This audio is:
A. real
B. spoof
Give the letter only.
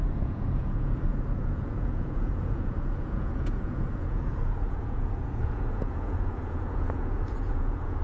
B